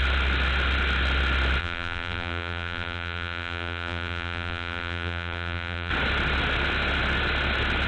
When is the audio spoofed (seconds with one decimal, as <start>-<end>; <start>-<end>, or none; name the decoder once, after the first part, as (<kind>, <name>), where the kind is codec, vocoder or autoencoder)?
1.6-5.9 (vocoder, BigVGAN v2)